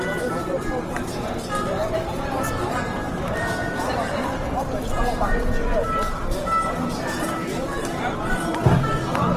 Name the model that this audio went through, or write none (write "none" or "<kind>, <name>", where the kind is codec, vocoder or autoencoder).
vocoder, BigVGAN v2